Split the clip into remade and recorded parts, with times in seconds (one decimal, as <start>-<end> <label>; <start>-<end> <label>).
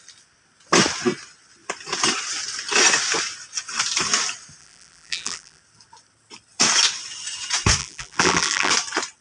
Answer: 0.0-4.6 recorded; 4.6-5.6 remade; 5.6-7.8 recorded; 7.8-8.7 remade; 8.7-9.2 recorded